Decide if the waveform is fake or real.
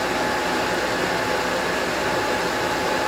real